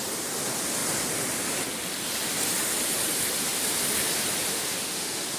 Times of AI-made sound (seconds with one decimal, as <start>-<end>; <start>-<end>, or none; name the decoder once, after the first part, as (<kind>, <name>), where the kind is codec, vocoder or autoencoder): 4.5-5.4 (autoencoder, DAC-VAE)